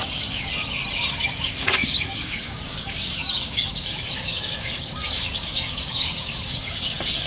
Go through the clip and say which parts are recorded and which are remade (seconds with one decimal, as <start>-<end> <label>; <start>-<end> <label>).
0.0-0.5 remade; 0.5-1.3 recorded; 1.3-7.3 remade